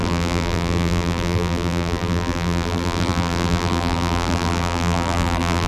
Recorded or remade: remade